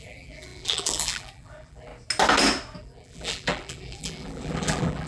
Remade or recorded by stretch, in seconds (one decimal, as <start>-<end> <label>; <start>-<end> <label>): 0.0-1.9 remade; 1.9-2.8 recorded; 2.8-5.1 remade